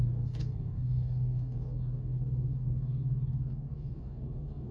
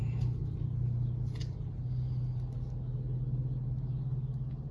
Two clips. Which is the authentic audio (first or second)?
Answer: second